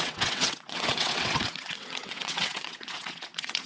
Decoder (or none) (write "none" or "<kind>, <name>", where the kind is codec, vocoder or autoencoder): vocoder, WaveNeXt